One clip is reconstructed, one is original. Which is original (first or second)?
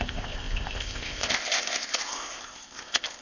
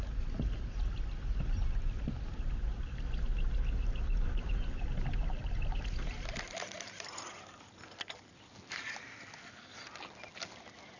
second